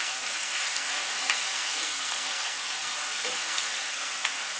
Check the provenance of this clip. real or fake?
fake